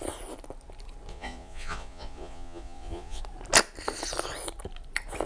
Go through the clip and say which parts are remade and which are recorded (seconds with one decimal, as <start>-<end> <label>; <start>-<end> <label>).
0.0-1.1 recorded; 1.1-3.2 remade; 3.2-5.3 recorded